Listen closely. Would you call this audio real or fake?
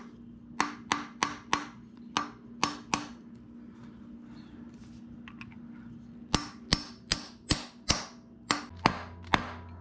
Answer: real